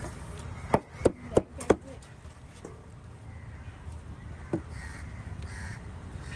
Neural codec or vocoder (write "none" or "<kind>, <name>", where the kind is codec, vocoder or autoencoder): none